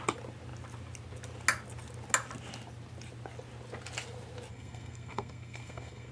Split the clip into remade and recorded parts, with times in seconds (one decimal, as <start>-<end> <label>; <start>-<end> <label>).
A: 0.0-4.5 recorded; 4.5-6.1 remade